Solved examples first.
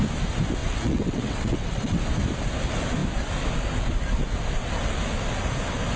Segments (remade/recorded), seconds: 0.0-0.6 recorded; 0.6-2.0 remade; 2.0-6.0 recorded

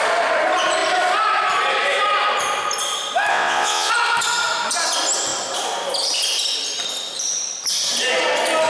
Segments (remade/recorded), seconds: 0.0-3.3 recorded; 3.3-3.9 remade; 3.9-8.7 recorded

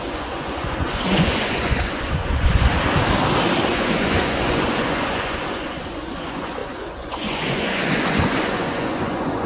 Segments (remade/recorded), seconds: 0.0-2.7 remade; 2.7-3.7 recorded; 3.7-9.5 remade

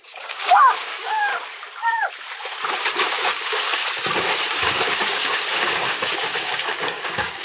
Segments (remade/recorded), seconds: 0.0-1.3 remade; 1.3-2.8 recorded; 2.8-3.8 remade; 3.8-4.5 recorded; 4.5-7.4 remade

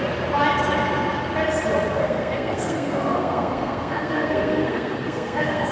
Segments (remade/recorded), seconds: 0.0-2.0 recorded; 2.0-5.7 remade

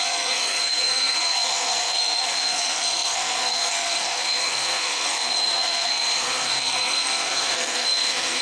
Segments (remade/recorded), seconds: 0.0-8.4 remade

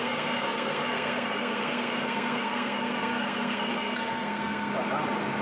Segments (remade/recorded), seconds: 0.0-4.7 remade; 4.7-5.4 recorded

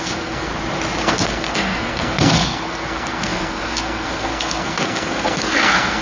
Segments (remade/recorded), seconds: 0.0-0.5 remade; 0.5-1.0 recorded; 1.0-6.0 remade